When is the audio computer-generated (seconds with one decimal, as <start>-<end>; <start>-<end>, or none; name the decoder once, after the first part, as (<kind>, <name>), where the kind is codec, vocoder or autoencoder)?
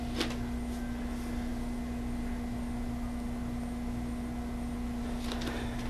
none